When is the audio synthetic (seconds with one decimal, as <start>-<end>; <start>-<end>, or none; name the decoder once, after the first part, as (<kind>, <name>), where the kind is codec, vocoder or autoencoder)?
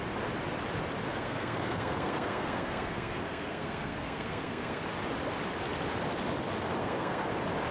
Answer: 1.1-4.8 (codec, SNAC); 6.8-7.3